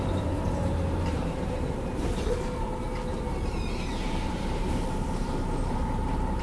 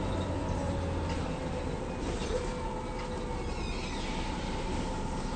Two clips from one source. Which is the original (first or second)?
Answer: second